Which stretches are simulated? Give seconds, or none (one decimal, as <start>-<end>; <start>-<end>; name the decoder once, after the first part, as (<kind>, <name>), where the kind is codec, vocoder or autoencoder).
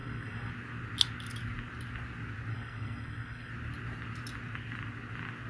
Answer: 0.0-0.5 (codec, SNAC); 2.5-3.5